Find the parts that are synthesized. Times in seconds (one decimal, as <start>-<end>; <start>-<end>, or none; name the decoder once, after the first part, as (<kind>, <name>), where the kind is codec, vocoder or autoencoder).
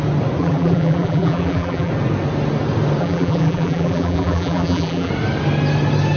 0.4-1.9 (vocoder, BigVGAN v2); 3.0-5.1